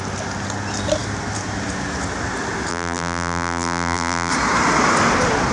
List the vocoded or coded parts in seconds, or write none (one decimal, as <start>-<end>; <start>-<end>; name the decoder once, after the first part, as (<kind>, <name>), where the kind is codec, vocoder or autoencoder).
2.7-4.3 (vocoder, BigVGAN v2)